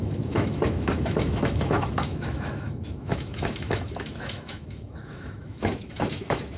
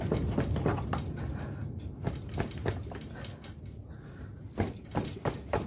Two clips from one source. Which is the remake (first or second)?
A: first